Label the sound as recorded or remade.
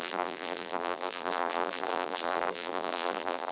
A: remade